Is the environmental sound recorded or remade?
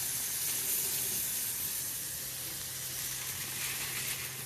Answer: recorded